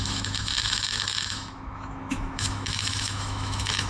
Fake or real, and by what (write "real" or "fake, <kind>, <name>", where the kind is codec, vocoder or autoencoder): fake, autoencoder, DAC-VAE